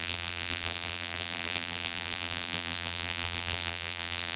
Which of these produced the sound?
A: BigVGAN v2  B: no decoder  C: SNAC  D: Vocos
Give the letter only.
A